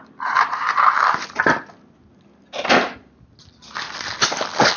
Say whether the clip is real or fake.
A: real